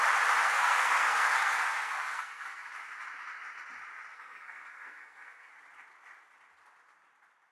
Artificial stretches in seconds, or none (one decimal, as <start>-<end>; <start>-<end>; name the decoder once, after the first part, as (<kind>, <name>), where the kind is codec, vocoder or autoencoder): 0.4-2.7 (codec, SNAC); 4.1-5.5